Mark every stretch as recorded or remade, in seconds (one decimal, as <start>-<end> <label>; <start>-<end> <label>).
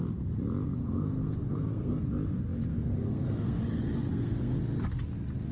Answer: 0.0-0.8 recorded; 0.8-2.0 remade; 2.0-2.7 recorded; 2.7-3.6 remade; 3.6-4.1 recorded; 4.1-4.6 remade; 4.6-5.5 recorded